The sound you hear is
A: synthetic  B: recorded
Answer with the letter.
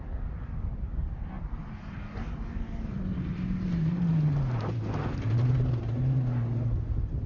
B